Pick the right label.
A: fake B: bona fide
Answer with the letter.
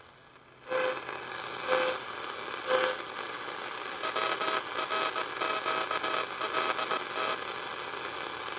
B